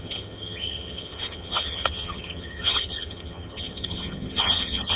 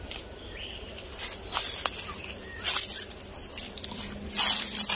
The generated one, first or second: first